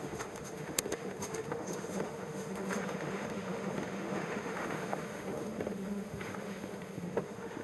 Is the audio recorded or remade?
remade